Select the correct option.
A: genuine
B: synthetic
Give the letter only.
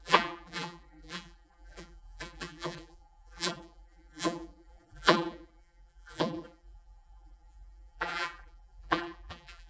B